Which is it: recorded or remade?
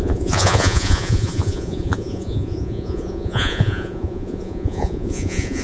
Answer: remade